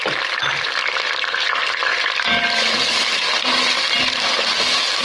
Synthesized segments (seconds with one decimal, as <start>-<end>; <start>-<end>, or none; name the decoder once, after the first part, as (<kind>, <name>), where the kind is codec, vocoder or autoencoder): none